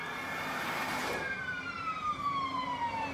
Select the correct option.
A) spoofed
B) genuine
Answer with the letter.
A